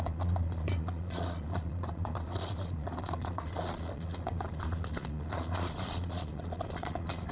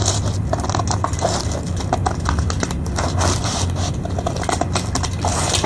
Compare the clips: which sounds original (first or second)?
second